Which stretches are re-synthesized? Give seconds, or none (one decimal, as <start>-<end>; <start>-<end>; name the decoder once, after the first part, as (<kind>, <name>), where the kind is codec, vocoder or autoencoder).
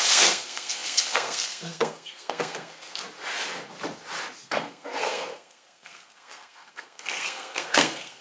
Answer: 0.0-3.0 (codec, SNAC); 4.4-8.2